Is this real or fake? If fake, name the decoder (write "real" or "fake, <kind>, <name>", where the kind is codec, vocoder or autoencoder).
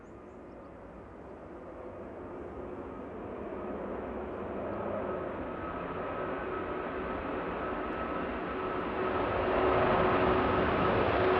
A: real